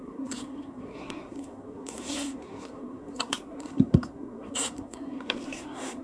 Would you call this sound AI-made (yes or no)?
yes